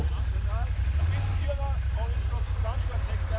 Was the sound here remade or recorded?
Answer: recorded